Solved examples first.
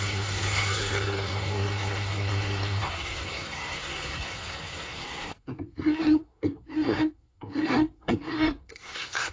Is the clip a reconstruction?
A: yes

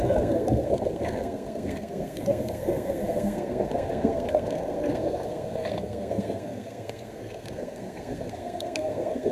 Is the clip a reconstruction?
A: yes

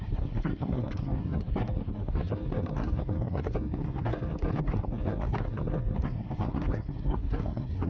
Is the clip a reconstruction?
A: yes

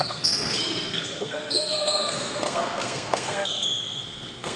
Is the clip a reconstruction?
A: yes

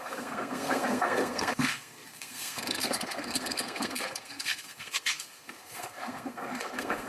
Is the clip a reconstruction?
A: yes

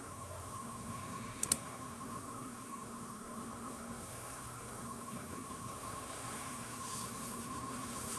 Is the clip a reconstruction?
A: yes